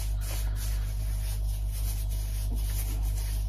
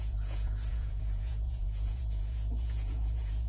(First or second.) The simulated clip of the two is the second